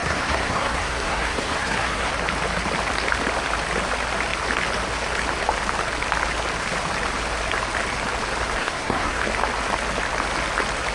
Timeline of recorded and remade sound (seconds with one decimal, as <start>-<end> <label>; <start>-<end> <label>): 0.0-2.1 remade; 2.1-8.6 recorded; 8.6-9.2 remade; 9.2-10.9 recorded